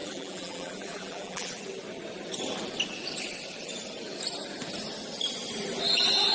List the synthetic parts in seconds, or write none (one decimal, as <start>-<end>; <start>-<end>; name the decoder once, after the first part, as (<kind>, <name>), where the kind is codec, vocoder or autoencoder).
0.0-1.6 (vocoder, BigVGAN v2)